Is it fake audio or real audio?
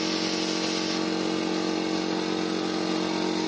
real